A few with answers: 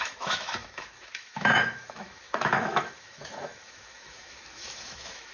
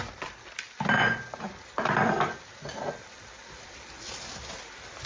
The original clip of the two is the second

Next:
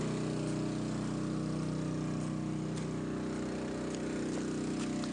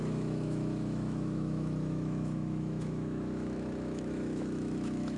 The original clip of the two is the first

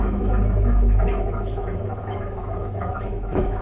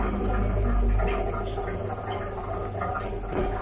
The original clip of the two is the second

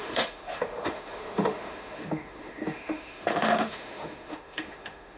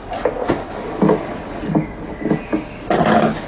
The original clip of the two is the second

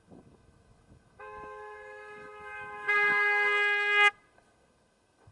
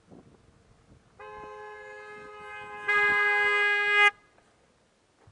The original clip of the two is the second